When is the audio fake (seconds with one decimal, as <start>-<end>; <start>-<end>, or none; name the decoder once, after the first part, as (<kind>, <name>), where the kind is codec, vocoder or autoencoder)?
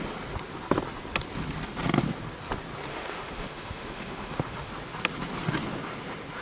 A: 2.9-4.7 (autoencoder, DAC-VAE)